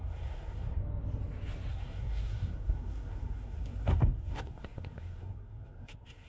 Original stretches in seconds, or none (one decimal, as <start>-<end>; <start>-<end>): 0.8-1.7